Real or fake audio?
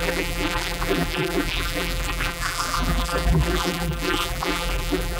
fake